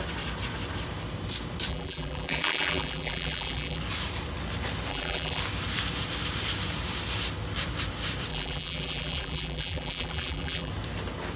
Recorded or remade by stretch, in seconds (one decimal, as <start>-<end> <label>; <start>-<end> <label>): 0.0-1.7 recorded; 1.7-3.8 remade; 3.8-4.9 recorded; 4.9-5.4 remade; 5.4-8.3 recorded; 8.3-10.7 remade; 10.7-11.4 recorded